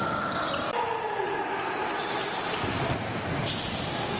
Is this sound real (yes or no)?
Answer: yes